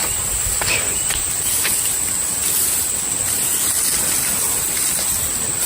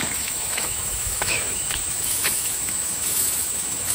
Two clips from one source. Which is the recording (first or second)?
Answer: first